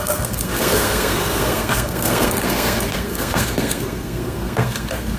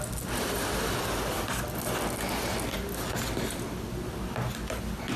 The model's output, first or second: first